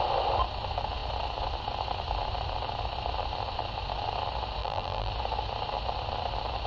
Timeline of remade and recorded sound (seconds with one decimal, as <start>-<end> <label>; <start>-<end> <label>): 0.0-4.6 recorded; 4.6-5.1 remade; 5.1-6.7 recorded